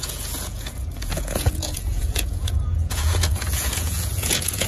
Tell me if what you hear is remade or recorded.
remade